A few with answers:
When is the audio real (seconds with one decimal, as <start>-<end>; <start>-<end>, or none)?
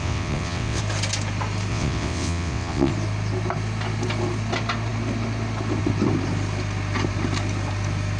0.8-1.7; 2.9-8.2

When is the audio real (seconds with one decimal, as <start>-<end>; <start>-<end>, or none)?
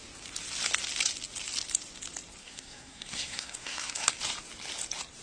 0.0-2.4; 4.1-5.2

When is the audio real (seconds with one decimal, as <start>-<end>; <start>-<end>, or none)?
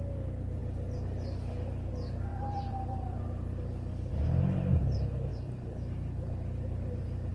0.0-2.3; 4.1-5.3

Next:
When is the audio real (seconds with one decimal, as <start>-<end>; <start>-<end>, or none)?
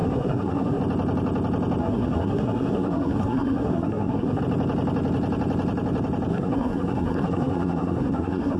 0.8-1.8; 4.4-6.3